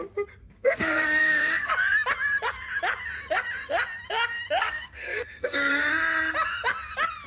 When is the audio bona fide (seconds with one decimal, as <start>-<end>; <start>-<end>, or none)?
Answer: 0.0-0.4; 1.7-4.6; 5.7-7.3